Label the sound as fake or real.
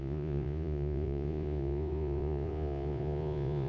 fake